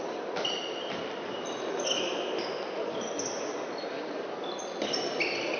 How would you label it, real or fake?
real